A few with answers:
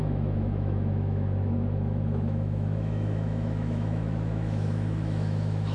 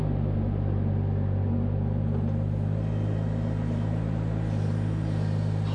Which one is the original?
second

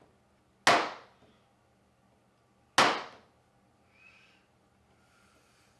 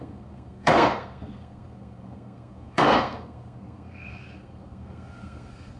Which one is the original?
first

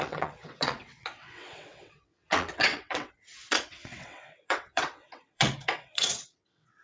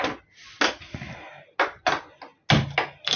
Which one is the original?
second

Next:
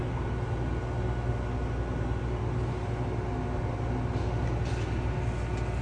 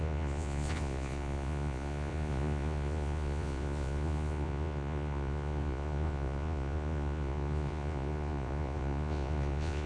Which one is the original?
first